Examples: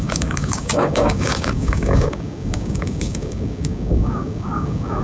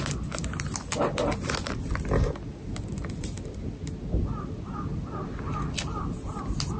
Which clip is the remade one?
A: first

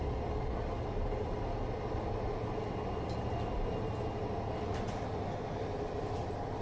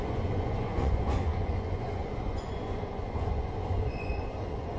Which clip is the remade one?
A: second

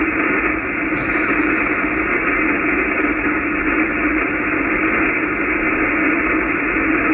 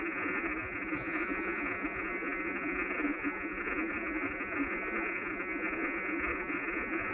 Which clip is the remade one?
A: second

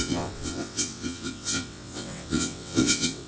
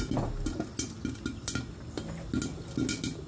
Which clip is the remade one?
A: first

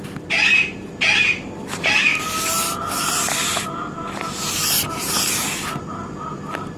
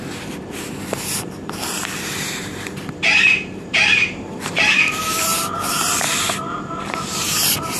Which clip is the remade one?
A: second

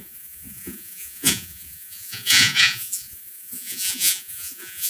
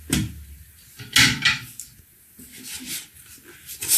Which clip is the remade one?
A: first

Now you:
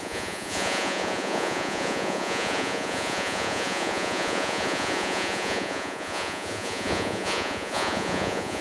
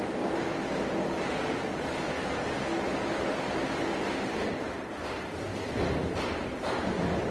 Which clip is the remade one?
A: first